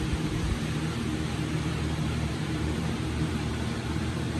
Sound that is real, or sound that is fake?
fake